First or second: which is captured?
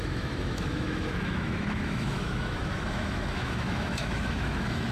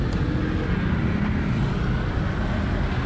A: second